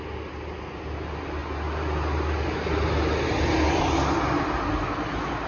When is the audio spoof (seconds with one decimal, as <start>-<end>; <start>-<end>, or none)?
none